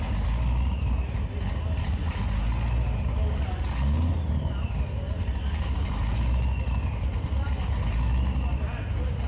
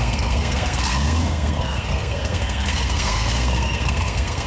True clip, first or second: first